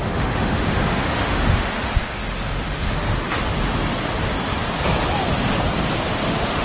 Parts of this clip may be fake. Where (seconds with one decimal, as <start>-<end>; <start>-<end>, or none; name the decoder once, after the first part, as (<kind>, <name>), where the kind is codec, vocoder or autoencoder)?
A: 0.0-3.2 (autoencoder, DAC-VAE); 6.1-6.6